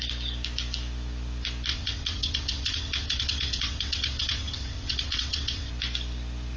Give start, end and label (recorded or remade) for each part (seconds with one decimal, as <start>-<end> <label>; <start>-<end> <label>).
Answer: 0.0-1.7 recorded; 1.7-5.7 remade; 5.7-6.6 recorded